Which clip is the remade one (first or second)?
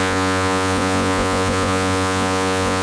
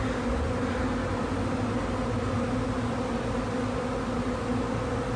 first